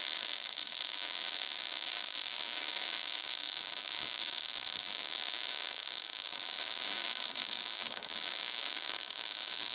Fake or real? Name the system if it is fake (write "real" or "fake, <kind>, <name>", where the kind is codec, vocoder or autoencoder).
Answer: fake, codec, DAC